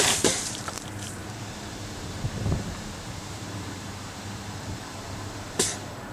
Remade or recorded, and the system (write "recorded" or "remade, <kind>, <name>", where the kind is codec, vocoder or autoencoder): remade, vocoder, BigVGAN v2